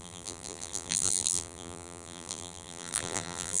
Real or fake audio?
fake